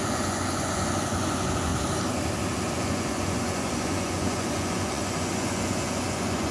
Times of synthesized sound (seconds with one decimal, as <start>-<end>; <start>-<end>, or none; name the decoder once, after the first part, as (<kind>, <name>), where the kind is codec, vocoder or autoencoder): 0.0-1.7 (vocoder, Vocos); 2.7-6.5